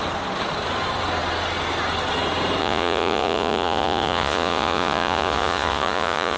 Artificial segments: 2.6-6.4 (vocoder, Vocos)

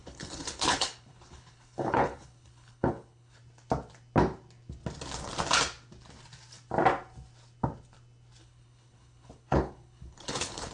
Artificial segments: 0.0-3.4 (codec, HILCodec); 8.4-10.7

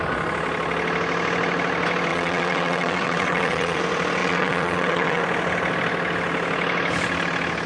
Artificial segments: 2.1-3.8 (vocoder, WaveNeXt); 4.2-5.2